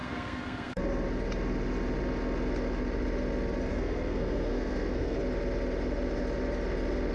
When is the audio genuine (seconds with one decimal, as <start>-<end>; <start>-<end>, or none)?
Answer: 0.8-3.7; 5.2-7.1